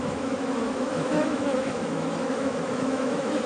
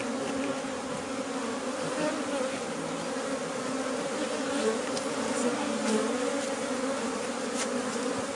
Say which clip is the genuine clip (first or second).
second